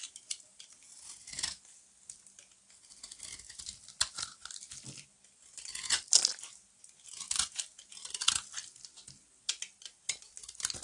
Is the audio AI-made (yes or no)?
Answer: no